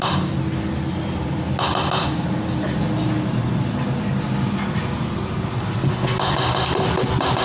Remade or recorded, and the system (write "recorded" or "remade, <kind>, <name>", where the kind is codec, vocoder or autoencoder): recorded